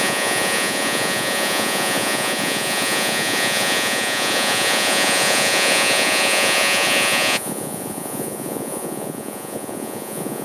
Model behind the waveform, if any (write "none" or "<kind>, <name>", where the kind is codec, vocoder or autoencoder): vocoder, Vocos